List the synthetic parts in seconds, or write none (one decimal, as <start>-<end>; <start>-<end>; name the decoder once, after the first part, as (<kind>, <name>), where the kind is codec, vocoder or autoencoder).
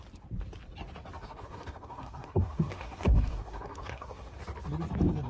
1.2-4.4 (codec, SNAC)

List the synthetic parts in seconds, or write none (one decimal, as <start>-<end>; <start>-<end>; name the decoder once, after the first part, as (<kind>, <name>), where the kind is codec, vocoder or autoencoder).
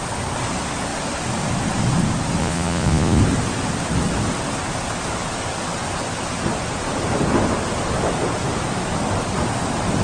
2.4-3.2 (vocoder, Vocos)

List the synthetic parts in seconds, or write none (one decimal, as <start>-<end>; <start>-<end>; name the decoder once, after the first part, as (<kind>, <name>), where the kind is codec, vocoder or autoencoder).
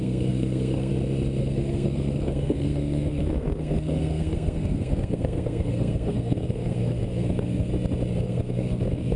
0.0-0.9 (codec, SNAC); 1.4-7.7; 8.2-9.2